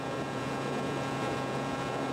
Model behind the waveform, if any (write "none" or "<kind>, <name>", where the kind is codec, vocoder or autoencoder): vocoder, Vocos